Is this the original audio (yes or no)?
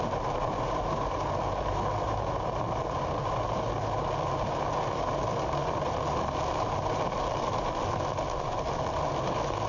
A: yes